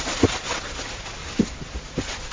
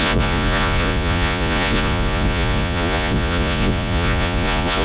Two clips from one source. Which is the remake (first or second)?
second